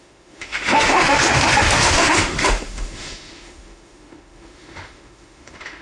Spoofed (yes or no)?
yes